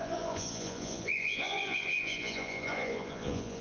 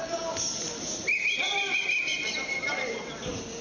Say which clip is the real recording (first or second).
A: second